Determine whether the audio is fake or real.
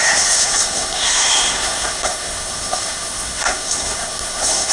fake